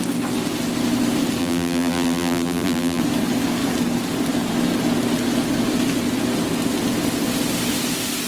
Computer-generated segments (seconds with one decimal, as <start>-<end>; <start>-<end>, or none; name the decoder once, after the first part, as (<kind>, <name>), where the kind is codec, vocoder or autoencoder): 1.4-3.0 (vocoder, BigVGAN v2)